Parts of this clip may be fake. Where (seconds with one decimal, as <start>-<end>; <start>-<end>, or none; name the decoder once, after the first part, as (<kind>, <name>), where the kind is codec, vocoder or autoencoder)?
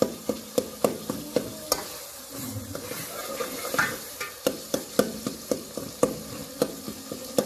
3.2-5.4 (vocoder, BigVGAN v2)